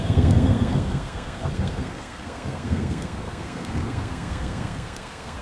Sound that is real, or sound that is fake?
fake